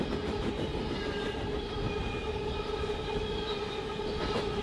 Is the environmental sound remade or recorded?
recorded